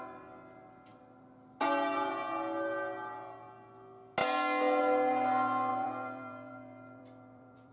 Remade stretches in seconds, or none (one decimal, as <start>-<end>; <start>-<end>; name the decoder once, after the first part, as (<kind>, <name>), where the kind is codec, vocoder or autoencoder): 5.7-7.7 (vocoder, BigVGAN v2)